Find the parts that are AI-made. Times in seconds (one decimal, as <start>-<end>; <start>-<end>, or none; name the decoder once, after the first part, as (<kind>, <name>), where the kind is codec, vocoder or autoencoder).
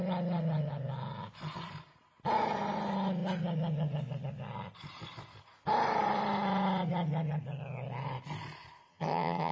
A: 8.9-9.5 (vocoder, HiFi-GAN)